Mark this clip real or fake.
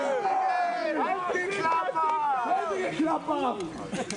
real